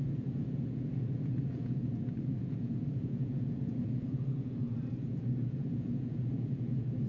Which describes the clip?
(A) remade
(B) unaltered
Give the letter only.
A